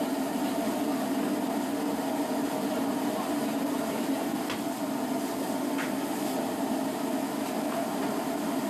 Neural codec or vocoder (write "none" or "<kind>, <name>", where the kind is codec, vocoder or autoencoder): none